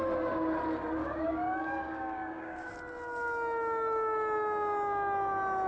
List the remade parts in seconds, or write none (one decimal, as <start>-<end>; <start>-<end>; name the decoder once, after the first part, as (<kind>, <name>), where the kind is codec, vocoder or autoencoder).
1.0-2.7 (codec, DAC)